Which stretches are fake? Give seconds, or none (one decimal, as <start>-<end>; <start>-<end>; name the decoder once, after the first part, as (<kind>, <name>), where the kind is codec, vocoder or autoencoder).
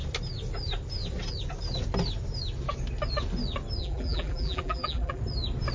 3.8-5.2 (vocoder, BigVGAN v2)